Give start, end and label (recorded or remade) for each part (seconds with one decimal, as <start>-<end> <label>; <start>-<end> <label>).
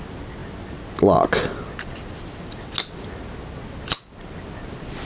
0.0-5.1 recorded